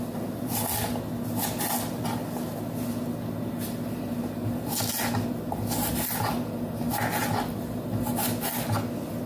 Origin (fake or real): real